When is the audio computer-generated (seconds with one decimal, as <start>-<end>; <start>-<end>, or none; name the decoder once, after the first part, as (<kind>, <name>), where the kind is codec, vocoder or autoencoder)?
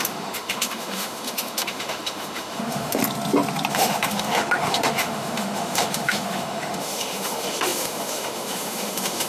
0.0-3.0 (autoencoder, DAC-VAE); 3.7-9.3